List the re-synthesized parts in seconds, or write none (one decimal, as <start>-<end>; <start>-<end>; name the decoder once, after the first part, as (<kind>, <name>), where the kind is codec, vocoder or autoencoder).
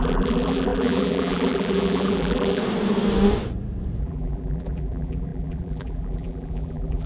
0.0-2.6 (vocoder, BigVGAN v2); 4.0-7.1